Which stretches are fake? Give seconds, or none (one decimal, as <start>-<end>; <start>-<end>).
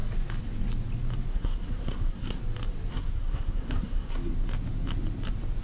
1.3-2.4; 2.9-4.3